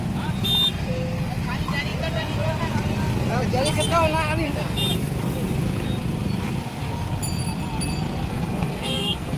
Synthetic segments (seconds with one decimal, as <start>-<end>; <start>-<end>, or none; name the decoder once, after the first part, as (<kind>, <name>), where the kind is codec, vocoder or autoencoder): 8.3-9.4 (codec, SNAC)